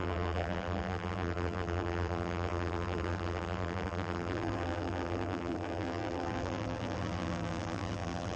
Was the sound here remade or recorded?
remade